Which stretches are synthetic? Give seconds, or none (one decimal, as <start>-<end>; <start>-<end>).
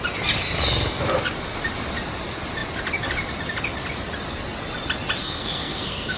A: 5.2-6.2